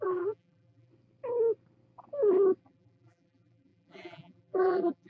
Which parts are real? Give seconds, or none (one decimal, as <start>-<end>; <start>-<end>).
0.9-2.6